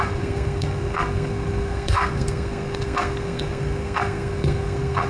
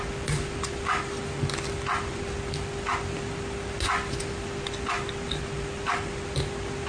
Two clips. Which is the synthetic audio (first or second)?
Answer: first